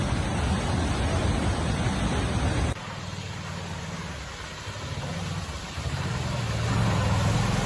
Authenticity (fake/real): real